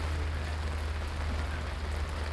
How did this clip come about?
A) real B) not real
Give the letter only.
A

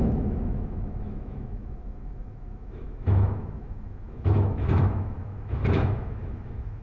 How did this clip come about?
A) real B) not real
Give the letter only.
B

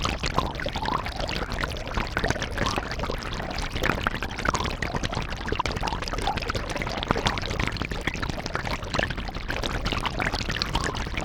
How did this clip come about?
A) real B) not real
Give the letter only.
A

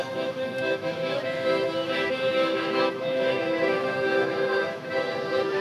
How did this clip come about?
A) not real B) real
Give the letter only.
A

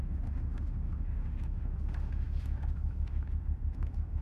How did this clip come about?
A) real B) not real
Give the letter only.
B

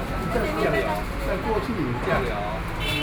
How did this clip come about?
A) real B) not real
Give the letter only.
A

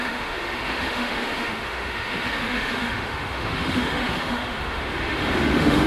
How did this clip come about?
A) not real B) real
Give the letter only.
A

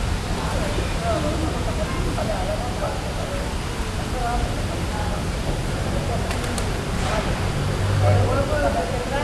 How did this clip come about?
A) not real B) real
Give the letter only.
B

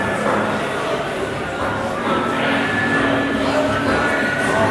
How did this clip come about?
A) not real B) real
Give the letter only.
B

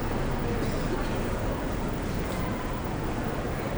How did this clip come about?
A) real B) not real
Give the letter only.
A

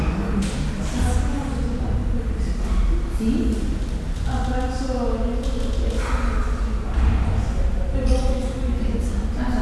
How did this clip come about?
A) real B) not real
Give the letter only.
A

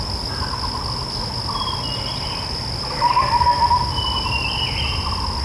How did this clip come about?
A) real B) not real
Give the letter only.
A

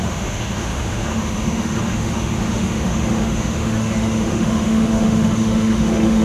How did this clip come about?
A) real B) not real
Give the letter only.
B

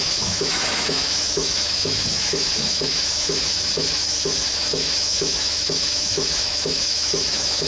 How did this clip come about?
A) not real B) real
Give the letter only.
A